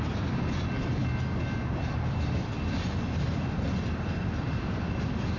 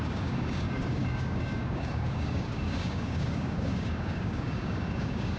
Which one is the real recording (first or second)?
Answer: first